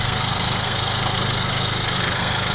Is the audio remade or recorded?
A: remade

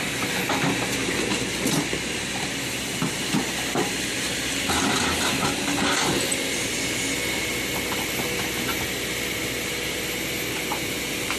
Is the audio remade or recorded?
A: recorded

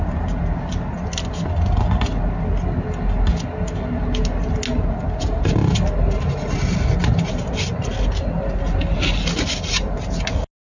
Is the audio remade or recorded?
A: recorded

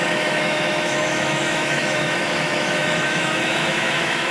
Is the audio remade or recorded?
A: remade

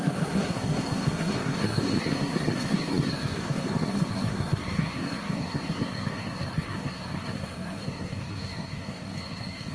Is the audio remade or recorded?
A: remade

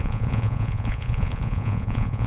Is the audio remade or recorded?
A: remade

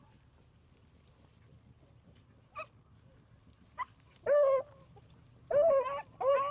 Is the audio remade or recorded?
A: recorded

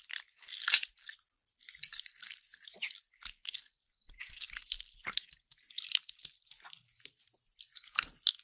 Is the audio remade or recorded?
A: recorded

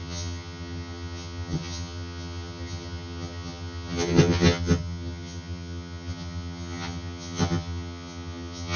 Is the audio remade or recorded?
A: remade